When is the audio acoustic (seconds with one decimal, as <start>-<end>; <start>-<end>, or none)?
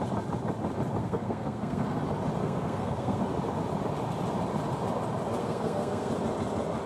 0.0-1.0; 2.0-2.4; 3.2-5.4; 6.1-6.9